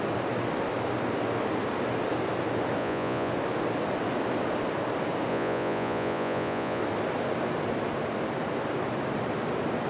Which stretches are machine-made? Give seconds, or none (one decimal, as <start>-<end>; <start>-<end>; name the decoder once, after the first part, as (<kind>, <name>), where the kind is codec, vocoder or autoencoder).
2.8-3.3 (vocoder, Vocos); 5.3-6.8